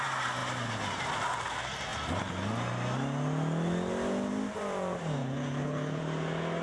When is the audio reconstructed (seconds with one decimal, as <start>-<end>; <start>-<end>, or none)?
5.2-6.0